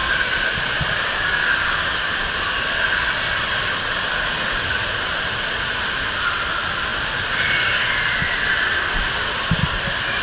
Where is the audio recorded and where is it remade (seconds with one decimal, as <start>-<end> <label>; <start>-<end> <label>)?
0.0-10.2 recorded